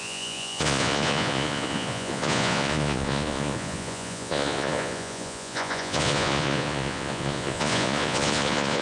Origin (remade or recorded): remade